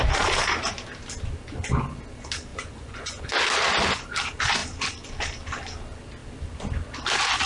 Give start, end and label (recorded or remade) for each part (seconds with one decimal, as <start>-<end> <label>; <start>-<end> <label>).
0.0-2.5 recorded; 2.5-3.2 remade; 3.2-7.5 recorded